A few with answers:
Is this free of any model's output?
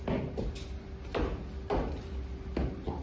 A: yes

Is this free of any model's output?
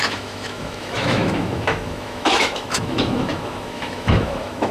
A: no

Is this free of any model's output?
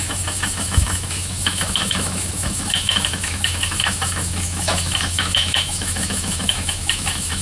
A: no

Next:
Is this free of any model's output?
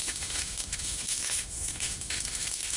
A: no